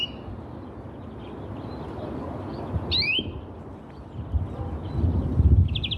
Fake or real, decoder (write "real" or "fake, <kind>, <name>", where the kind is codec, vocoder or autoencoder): real